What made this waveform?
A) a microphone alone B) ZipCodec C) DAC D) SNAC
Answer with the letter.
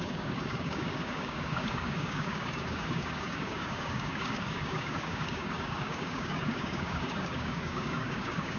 C